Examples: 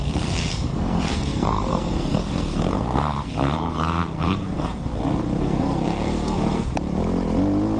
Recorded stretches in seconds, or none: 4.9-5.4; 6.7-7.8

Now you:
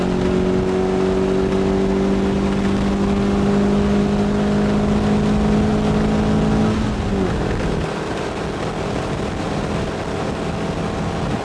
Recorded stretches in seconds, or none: 0.0-11.4

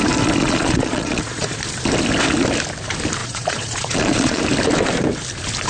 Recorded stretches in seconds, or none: 0.0-0.4; 1.6-3.2; 4.4-5.7

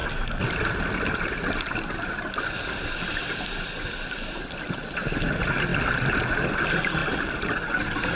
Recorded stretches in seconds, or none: 2.4-7.0; 7.7-8.2

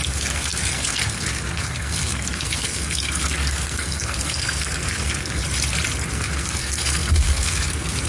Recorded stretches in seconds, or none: 5.4-6.1

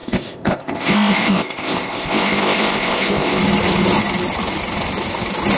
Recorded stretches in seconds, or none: 3.4-5.6

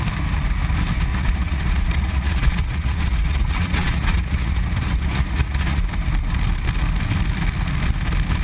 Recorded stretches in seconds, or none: 0.0-1.1; 5.8-8.4